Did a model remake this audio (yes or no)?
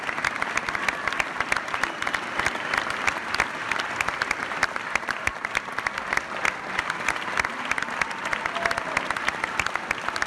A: no